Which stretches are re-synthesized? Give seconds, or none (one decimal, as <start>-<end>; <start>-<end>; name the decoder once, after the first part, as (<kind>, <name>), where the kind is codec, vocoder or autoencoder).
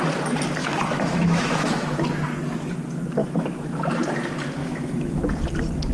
0.6-2.0 (autoencoder, DAC-VAE); 3.2-3.8; 4.6-5.2